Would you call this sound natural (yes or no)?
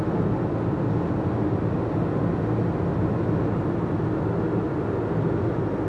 yes